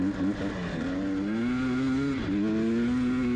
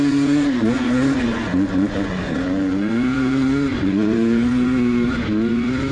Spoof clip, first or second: second